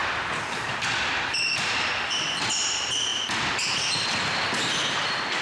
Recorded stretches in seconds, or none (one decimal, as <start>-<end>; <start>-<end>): 0.0-5.4